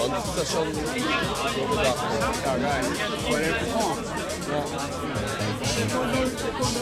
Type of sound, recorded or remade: recorded